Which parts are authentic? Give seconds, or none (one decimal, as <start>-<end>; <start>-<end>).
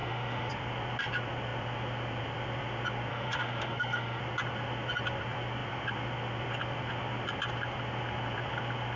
0.5-3.1; 4.2-9.0